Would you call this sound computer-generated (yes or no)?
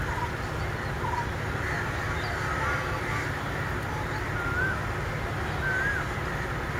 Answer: no